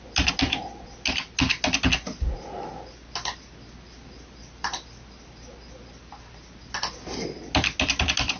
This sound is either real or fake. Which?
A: real